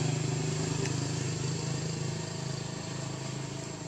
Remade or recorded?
recorded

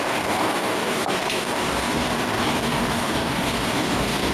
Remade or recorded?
remade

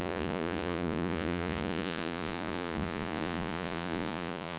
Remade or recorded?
remade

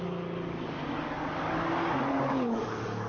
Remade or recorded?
remade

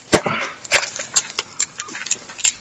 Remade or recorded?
recorded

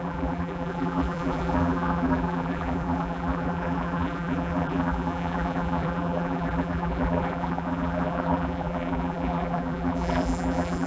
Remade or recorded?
remade